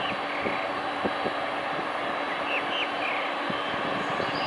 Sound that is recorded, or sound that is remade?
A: recorded